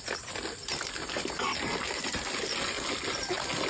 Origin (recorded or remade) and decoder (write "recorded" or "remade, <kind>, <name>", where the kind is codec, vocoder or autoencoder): recorded